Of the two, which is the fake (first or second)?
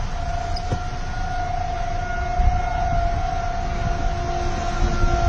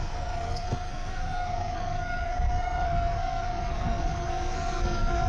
second